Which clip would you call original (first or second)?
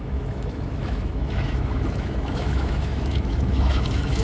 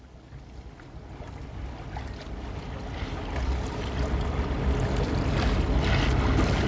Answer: second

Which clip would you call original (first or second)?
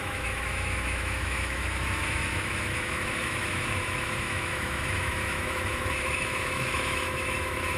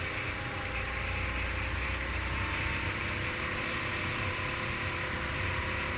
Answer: second